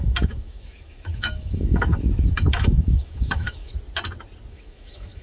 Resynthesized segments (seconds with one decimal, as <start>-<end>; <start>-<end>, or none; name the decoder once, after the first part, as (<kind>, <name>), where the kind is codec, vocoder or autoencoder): 0.0-3.7 (autoencoder, DAC-VAE); 4.5-5.2